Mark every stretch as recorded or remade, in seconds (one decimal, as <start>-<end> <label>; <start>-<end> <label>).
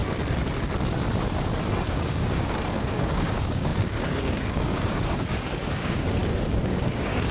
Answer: 0.0-1.9 recorded; 1.9-7.3 remade